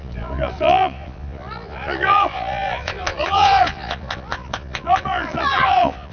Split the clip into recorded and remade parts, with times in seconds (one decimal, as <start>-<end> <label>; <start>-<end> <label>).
0.0-6.1 remade